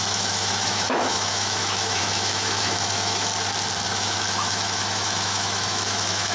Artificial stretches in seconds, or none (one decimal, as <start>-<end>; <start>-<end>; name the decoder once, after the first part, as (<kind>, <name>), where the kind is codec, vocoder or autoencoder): 0.0-3.3 (autoencoder, DAC-VAE); 3.9-6.3